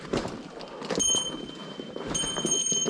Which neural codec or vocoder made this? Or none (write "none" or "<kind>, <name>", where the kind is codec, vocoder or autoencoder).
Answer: none